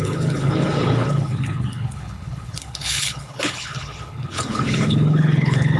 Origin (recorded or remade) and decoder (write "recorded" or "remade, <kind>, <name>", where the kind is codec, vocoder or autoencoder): remade, codec, HILCodec